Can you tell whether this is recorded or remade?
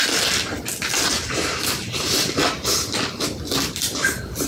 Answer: recorded